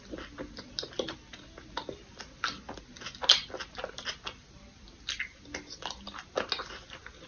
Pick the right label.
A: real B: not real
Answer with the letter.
A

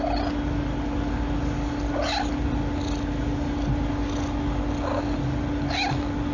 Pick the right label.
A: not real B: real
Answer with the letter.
B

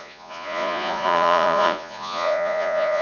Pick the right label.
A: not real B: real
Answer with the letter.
A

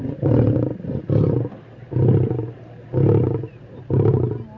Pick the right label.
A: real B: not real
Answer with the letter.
A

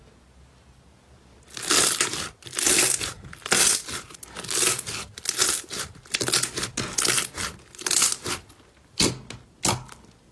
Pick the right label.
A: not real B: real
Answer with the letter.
B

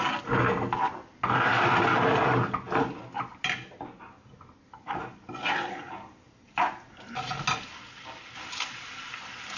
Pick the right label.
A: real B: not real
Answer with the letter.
A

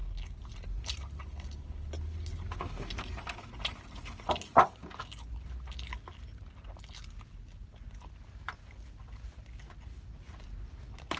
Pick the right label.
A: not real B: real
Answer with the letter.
B